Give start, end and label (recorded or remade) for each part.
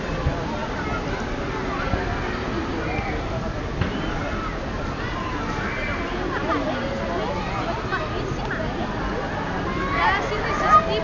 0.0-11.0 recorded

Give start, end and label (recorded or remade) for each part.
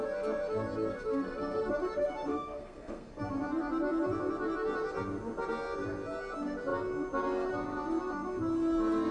0.0-0.9 recorded; 0.9-1.7 remade; 1.7-2.3 recorded; 2.3-3.2 remade; 3.2-9.1 recorded